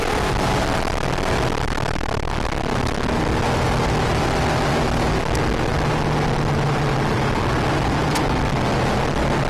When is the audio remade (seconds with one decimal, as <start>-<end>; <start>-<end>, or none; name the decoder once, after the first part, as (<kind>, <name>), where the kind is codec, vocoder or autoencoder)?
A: none